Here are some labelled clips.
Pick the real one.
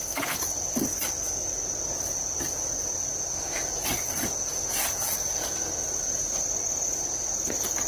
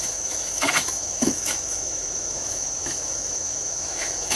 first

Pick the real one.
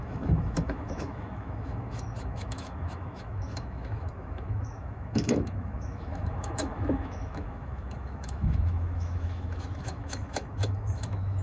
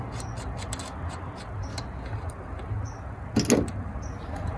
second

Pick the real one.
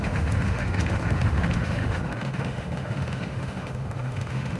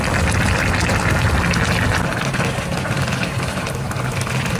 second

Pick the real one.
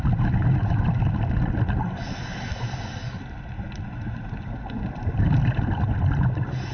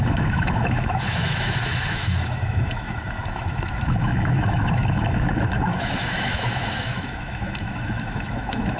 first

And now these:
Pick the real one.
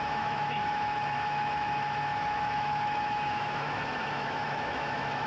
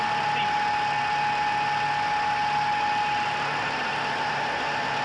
second